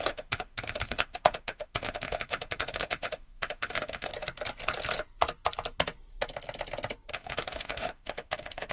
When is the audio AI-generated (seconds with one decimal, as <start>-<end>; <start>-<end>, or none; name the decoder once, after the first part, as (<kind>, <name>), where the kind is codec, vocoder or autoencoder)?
0.0-4.1 (autoencoder, DAC-VAE); 7.1-8.7